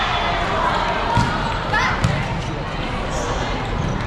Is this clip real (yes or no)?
yes